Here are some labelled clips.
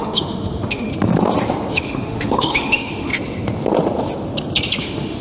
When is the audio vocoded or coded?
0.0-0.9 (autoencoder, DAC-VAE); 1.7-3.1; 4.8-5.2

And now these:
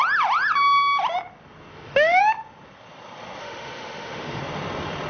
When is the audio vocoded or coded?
1.7-2.2 (autoencoder, DAC-VAE); 3.4-4.4

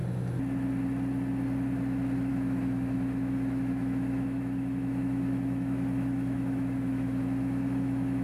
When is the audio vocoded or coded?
2.3-8.2 (autoencoder, DAC-VAE)

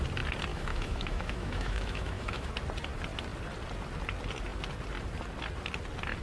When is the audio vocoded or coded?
0.5-2.5 (autoencoder, DAC-VAE)

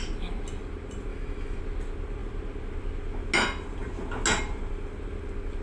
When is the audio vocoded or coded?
1.1-1.6 (autoencoder, DAC-VAE)

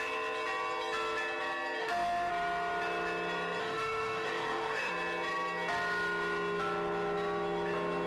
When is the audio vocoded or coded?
1.8-2.3 (autoencoder, DAC-VAE); 3.6-4.9

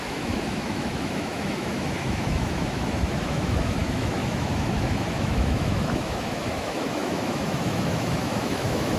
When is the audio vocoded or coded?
0.0-9.0 (autoencoder, DAC-VAE)

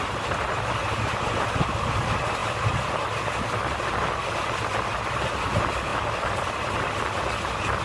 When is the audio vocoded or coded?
none